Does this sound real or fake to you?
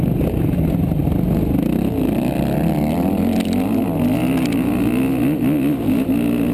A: real